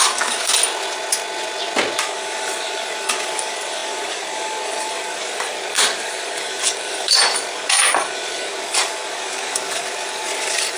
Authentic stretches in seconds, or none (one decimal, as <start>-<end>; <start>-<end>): 0.6-2.0

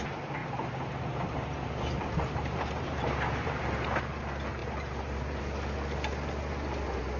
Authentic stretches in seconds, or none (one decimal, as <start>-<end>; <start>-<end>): 0.0-0.4; 4.0-4.6; 5.4-7.2

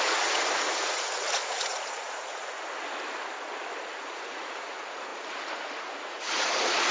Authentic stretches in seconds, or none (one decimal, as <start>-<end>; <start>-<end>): 2.4-3.8

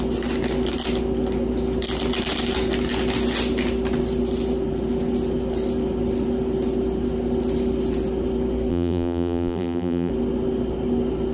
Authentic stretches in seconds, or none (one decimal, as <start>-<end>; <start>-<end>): 0.0-8.7; 10.1-11.3

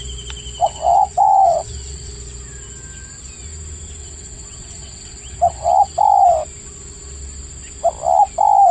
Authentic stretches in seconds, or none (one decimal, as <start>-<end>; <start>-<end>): 0.0-0.6; 2.1-4.0; 5.7-8.7

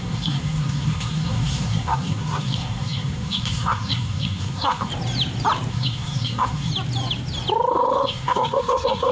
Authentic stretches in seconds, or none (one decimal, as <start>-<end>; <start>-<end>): 4.9-5.7; 6.7-7.7

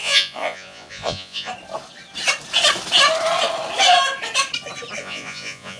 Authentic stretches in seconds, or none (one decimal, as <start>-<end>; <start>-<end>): 1.5-5.0

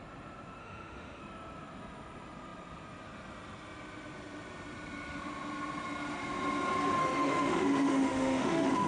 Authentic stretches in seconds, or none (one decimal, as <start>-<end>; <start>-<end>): 0.0-0.6; 1.2-7.0